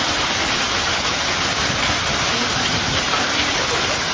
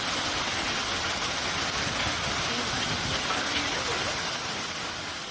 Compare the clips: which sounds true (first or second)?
second